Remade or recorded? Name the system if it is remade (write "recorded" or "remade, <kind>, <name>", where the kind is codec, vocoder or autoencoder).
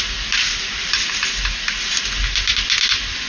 recorded